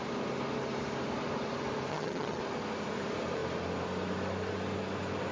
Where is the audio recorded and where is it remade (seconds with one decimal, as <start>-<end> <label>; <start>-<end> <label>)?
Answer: 0.0-1.9 recorded; 1.9-2.4 remade; 2.4-5.3 recorded